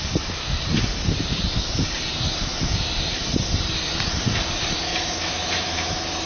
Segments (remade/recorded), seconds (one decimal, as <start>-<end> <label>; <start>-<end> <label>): 0.0-4.9 recorded; 4.9-6.3 remade